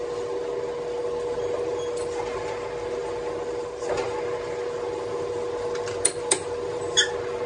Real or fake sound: real